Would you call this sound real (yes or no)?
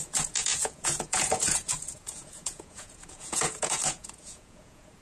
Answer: no